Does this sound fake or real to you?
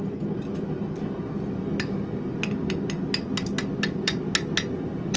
real